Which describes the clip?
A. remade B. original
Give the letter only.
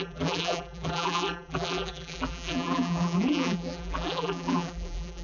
A